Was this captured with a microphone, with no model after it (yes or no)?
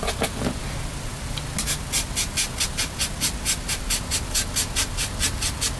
yes